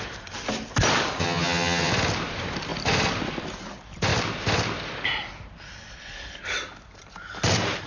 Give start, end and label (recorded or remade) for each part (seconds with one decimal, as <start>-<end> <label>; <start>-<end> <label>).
0.0-1.2 recorded; 1.2-1.9 remade; 1.9-7.9 recorded